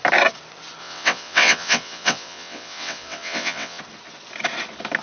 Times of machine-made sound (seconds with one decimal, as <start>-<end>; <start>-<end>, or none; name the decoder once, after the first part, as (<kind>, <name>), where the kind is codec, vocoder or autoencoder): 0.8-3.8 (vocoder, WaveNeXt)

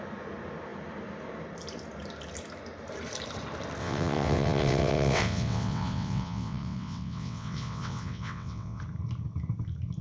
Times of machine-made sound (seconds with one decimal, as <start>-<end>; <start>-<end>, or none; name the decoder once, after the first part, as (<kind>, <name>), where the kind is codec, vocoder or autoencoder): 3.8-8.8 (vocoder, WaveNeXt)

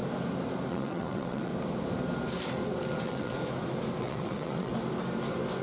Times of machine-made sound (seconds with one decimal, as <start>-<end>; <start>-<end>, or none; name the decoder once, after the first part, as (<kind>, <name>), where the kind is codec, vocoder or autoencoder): 0.7-1.5 (vocoder, WaveNeXt); 3.0-3.4; 4.0-4.7